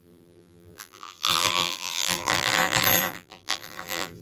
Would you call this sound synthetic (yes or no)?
yes